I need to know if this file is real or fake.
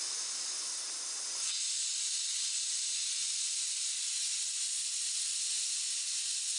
real